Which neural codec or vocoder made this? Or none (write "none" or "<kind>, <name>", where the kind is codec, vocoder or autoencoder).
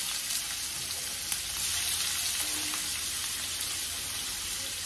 none